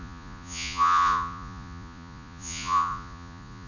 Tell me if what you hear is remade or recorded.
remade